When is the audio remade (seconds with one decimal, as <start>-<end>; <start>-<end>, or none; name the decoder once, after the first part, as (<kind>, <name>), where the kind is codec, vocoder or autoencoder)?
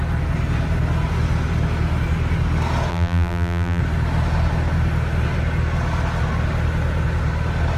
2.9-3.8 (vocoder, BigVGAN v2)